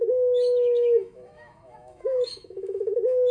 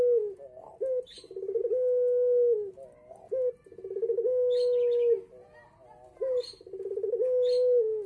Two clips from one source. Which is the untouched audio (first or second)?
second